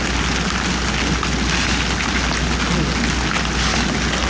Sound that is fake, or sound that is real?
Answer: real